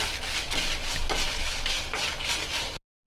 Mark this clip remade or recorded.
recorded